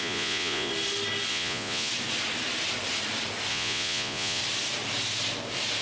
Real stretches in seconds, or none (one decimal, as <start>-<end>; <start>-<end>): 0.7-1.3; 1.9-3.5; 4.4-5.8